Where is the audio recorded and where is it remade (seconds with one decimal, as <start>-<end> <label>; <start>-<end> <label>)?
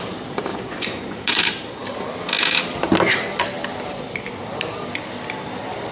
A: 0.0-0.5 recorded; 0.5-1.4 remade; 1.4-5.9 recorded